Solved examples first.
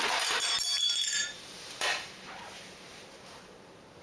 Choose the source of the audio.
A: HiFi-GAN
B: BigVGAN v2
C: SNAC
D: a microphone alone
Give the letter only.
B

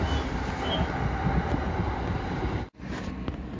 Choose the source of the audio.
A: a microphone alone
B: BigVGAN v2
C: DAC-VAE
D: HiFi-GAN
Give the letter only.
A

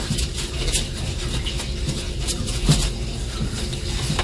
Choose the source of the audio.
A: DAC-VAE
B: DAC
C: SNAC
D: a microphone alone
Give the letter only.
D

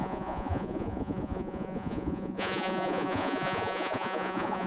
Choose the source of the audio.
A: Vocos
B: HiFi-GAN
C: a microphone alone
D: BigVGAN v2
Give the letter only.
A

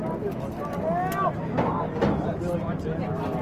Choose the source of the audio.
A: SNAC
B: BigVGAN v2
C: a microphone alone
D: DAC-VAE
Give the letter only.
C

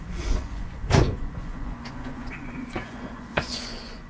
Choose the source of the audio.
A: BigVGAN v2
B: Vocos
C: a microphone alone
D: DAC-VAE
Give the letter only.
B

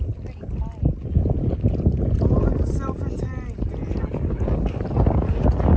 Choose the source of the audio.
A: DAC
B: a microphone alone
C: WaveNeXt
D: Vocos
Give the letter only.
B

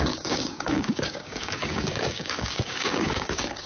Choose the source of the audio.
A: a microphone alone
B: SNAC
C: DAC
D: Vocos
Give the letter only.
C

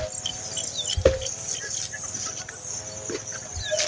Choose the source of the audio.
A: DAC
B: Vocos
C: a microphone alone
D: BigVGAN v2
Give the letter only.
C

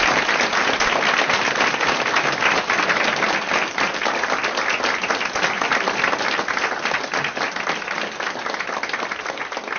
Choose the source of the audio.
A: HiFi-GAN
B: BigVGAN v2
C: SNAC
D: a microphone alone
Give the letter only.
D